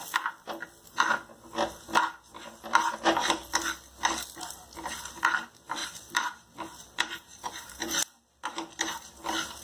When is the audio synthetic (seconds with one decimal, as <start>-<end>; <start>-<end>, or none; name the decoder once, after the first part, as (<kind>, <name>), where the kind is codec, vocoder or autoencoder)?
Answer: 5.8-7.8 (vocoder, BigVGAN v2)